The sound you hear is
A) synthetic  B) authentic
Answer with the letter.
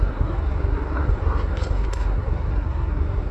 A